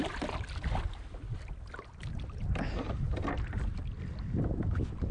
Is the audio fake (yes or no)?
no